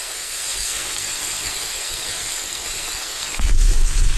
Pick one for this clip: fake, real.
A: fake